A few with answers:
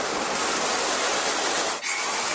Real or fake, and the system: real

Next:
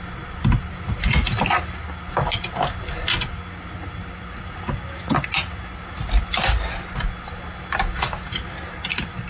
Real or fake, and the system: real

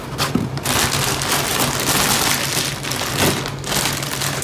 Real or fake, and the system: real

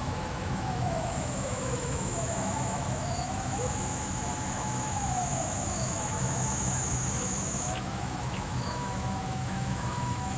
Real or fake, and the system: fake, autoencoder, DAC-VAE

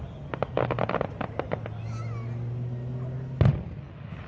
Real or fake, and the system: real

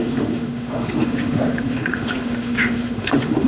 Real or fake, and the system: fake, autoencoder, DAC-VAE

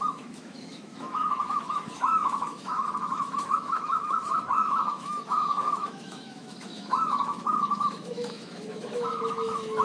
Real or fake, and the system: fake, autoencoder, DAC-VAE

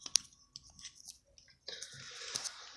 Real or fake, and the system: real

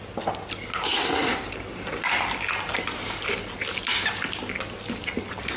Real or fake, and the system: real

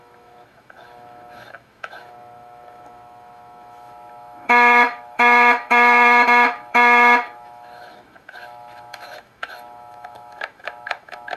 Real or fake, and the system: fake, autoencoder, DAC-VAE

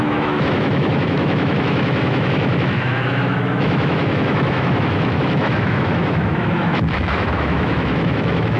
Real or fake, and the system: fake, autoencoder, DAC-VAE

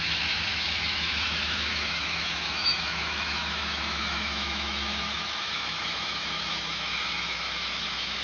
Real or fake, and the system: fake, autoencoder, DAC-VAE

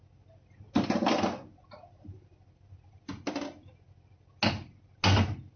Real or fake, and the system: real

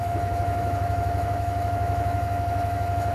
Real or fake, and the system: fake, autoencoder, DAC-VAE